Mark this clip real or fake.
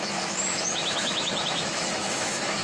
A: fake